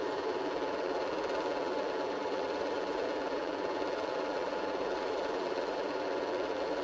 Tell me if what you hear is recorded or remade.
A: remade